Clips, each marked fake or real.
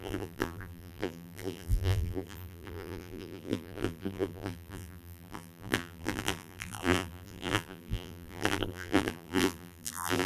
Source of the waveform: fake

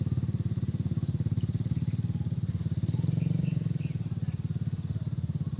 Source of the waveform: fake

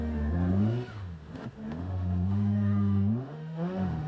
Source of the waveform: fake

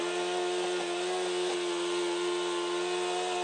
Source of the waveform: real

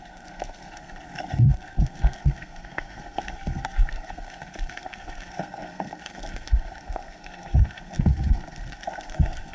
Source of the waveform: fake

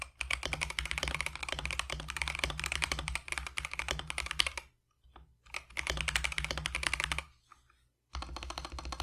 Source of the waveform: real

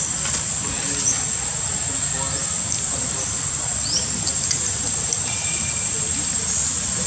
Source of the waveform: real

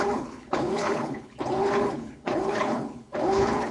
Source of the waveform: fake